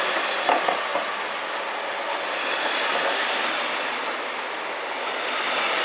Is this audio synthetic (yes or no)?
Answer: no